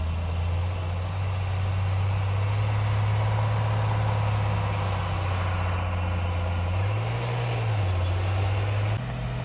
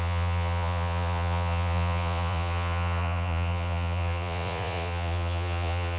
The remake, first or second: second